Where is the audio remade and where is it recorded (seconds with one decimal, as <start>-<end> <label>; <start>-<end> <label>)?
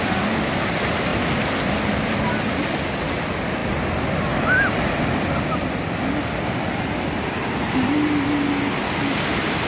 0.0-9.7 recorded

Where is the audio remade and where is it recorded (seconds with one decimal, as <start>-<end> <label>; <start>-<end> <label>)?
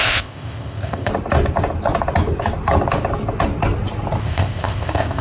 0.0-1.1 remade; 1.1-4.2 recorded; 4.2-5.2 remade